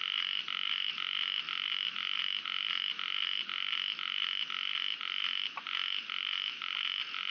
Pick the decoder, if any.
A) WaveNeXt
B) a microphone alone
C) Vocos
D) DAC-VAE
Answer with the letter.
B